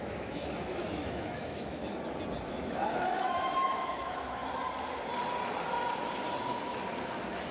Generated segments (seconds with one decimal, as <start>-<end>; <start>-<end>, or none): 0.0-1.8; 2.5-4.4; 6.9-7.5